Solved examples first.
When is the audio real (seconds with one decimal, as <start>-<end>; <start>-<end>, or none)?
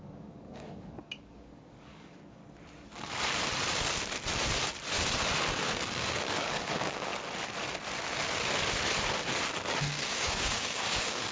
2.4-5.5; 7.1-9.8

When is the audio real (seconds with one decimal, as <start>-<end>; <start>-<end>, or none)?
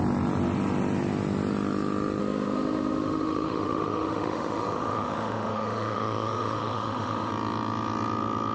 0.0-2.2; 7.3-8.5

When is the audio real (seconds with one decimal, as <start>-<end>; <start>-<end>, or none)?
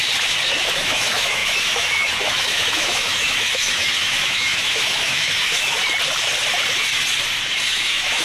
0.0-0.6; 5.8-7.7